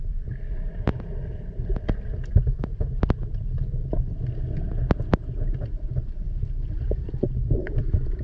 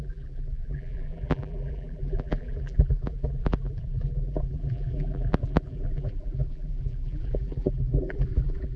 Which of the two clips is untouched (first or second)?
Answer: first